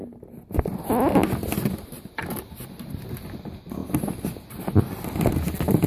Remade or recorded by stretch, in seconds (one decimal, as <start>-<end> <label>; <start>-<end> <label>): 0.0-1.4 recorded; 1.4-3.1 remade; 3.1-5.9 recorded